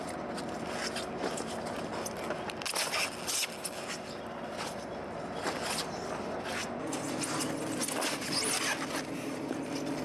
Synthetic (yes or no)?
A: no